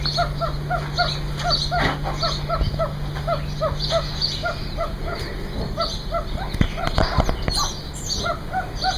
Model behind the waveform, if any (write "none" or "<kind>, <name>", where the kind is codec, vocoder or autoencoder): none